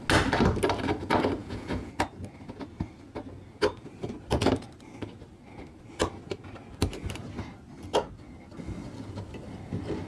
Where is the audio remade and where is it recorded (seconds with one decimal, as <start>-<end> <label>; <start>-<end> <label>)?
0.0-1.4 recorded; 1.4-1.9 remade; 1.9-10.1 recorded